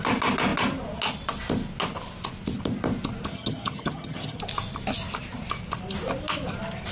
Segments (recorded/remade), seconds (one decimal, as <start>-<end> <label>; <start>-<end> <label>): 0.0-3.3 recorded; 3.3-4.4 remade; 4.4-6.9 recorded